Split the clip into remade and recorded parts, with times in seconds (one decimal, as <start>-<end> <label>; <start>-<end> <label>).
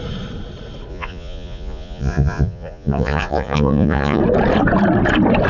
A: 0.0-0.9 recorded; 0.9-4.2 remade; 4.2-5.5 recorded